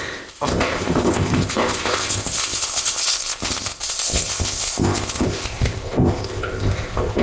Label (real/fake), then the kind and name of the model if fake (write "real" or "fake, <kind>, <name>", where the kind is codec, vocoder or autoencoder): fake, codec, ZipCodec